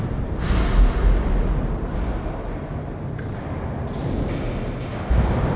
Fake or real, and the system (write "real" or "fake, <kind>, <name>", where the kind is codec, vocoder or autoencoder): real